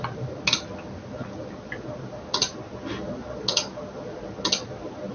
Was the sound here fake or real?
real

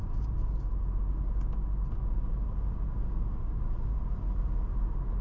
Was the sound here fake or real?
real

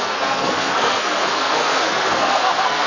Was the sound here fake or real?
fake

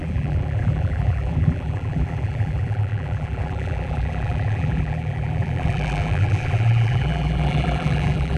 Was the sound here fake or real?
fake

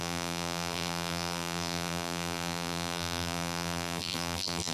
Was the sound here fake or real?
fake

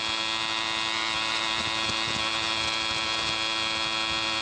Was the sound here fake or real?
real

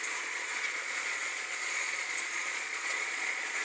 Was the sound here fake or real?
fake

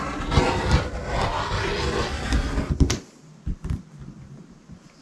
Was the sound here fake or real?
real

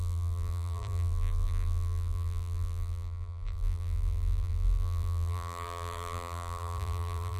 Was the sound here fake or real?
fake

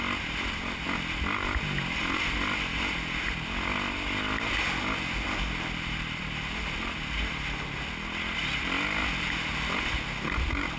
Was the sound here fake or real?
real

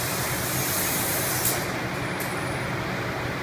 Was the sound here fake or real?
real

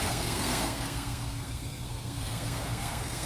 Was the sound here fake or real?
fake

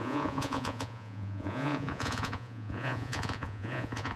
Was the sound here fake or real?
fake